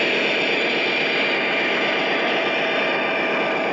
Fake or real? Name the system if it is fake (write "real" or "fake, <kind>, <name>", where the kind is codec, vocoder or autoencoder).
real